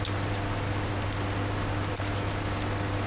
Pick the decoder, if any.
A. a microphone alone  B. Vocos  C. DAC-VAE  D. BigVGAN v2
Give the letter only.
A